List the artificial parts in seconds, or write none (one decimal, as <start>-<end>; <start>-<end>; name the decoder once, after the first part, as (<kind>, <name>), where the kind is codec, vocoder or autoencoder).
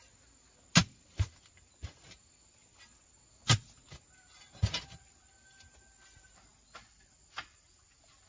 none